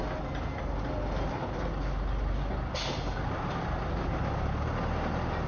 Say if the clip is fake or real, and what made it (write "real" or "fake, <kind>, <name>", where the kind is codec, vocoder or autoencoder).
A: real